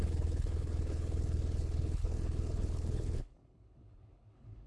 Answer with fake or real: fake